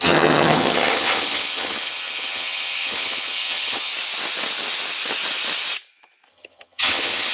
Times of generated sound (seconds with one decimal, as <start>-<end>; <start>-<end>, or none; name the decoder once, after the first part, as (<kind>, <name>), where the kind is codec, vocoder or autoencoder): 0.0-3.9 (vocoder, HiFi-GAN); 6.3-7.3